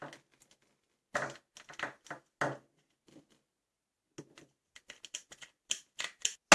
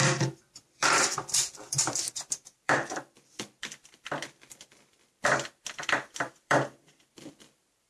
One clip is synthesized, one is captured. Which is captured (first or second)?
first